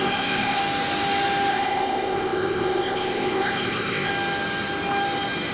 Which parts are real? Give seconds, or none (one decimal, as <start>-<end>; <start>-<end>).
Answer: 0.6-1.5; 4.1-5.5